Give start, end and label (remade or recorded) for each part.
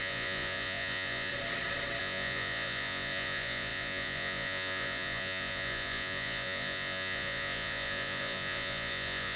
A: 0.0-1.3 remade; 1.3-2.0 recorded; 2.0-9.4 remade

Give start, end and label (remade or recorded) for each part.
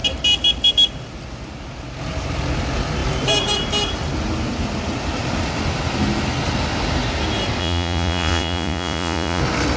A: 0.0-7.6 recorded; 7.6-9.4 remade; 9.4-9.8 recorded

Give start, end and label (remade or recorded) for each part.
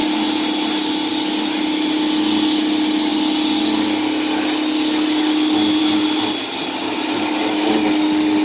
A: 0.0-8.4 recorded